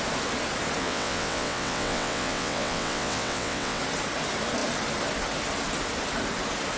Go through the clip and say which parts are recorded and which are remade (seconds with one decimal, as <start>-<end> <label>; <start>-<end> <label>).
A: 0.0-0.8 recorded; 0.8-3.8 remade; 3.8-6.8 recorded